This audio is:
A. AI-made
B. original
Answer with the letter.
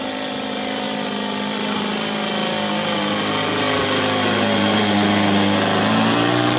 B